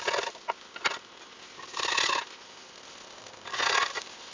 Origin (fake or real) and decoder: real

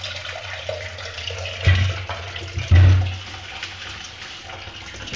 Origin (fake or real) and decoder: real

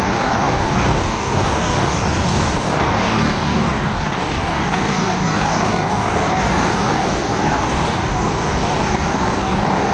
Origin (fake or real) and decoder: fake, codec, DAC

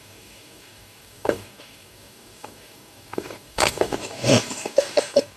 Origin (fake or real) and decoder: fake, codec, DAC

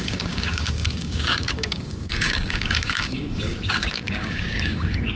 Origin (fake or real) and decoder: fake, codec, DAC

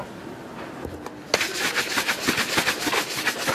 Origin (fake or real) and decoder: real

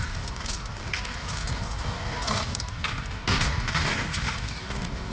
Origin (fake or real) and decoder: fake, codec, DAC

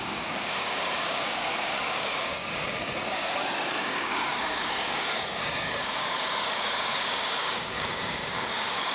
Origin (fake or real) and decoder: fake, codec, DAC